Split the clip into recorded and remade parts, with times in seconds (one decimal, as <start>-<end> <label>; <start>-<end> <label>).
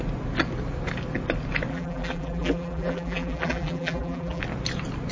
0.0-1.7 recorded; 1.7-4.4 remade; 4.4-5.1 recorded